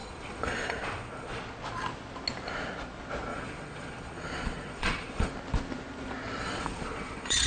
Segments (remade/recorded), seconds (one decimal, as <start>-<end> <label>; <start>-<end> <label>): 0.0-1.4 remade; 1.4-3.3 recorded; 3.3-5.3 remade; 5.3-6.4 recorded; 6.4-7.5 remade